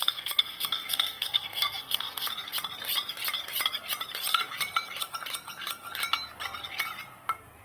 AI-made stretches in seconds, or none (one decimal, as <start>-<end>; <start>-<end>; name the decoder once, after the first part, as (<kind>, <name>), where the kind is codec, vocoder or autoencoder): 0.0-2.3 (codec, SNAC)